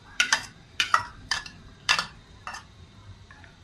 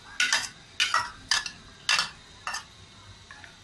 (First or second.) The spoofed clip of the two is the first